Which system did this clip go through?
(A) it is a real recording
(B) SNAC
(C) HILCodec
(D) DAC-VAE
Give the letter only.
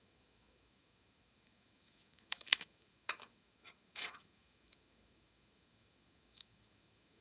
D